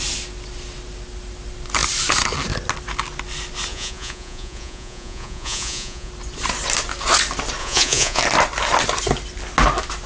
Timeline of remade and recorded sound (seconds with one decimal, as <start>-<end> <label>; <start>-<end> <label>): 0.0-3.7 recorded; 3.7-6.1 remade; 6.1-7.6 recorded; 7.6-8.2 remade; 8.2-10.1 recorded